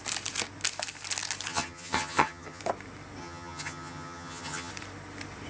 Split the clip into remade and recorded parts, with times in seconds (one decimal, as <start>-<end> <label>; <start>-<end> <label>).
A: 0.0-1.5 recorded; 1.5-2.6 remade; 2.6-3.2 recorded; 3.2-4.7 remade; 4.7-5.5 recorded

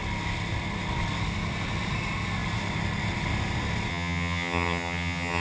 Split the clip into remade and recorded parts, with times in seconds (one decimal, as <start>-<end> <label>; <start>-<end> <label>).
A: 0.0-3.9 recorded; 3.9-5.4 remade